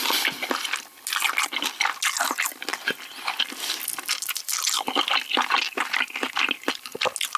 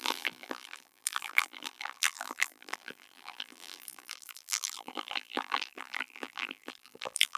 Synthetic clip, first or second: second